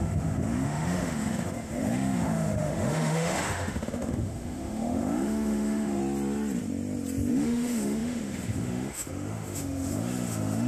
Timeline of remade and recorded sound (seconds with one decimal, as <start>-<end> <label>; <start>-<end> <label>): 0.0-6.0 remade; 6.0-7.3 recorded; 7.3-10.7 remade

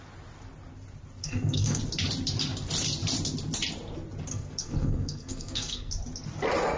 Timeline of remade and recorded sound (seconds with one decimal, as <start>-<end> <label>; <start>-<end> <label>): 0.0-1.2 recorded; 1.2-1.8 remade; 1.8-4.3 recorded; 4.3-5.9 remade; 5.9-6.8 recorded

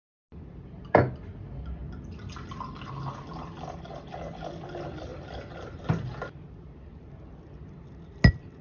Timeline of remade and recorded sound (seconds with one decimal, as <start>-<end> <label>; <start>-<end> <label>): 0.0-1.8 recorded; 1.8-2.9 remade; 2.9-5.1 recorded; 5.1-5.8 remade; 5.8-8.6 recorded

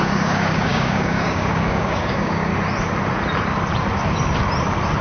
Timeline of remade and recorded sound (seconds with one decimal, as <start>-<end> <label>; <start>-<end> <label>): 0.0-2.5 remade; 2.5-5.0 recorded

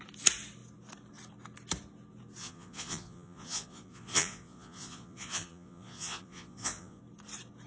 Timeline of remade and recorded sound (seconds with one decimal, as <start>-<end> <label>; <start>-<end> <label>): 0.0-2.4 recorded; 2.4-7.0 remade; 7.0-7.7 recorded

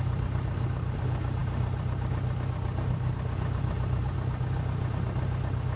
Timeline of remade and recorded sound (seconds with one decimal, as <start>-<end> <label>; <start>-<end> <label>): 0.0-5.8 recorded

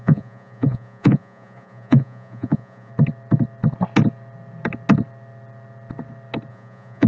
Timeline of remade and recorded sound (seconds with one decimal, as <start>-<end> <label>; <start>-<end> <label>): 0.0-2.9 remade; 2.9-6.5 recorded; 6.5-7.1 remade

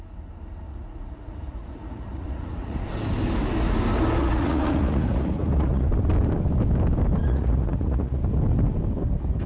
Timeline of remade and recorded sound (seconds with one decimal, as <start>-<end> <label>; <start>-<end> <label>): 0.0-0.7 recorded; 0.7-2.9 remade; 2.9-4.2 recorded; 4.2-5.9 remade; 5.9-7.2 recorded; 7.2-8.2 remade; 8.2-9.5 recorded